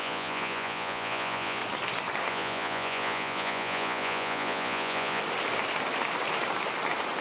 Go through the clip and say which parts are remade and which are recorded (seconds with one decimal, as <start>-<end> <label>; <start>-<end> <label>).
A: 0.0-1.6 remade; 1.6-2.3 recorded; 2.3-5.2 remade; 5.2-7.2 recorded